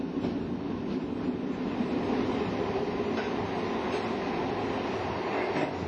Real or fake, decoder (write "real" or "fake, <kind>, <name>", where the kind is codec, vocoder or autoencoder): real